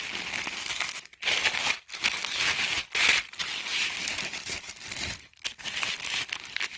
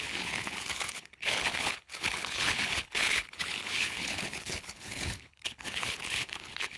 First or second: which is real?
first